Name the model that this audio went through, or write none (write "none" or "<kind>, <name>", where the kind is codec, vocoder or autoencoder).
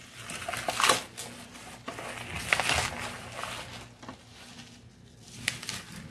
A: none